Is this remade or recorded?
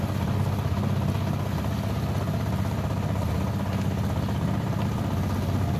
recorded